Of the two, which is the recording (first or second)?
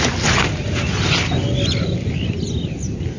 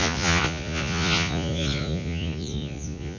first